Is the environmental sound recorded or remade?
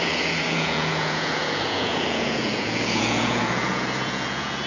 remade